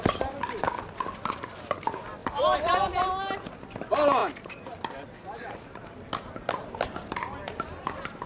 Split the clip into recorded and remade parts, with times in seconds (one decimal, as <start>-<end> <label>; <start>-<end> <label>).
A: 0.0-2.2 recorded; 2.2-3.0 remade; 3.0-8.3 recorded